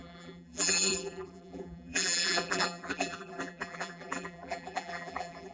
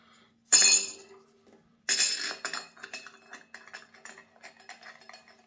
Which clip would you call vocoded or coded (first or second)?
first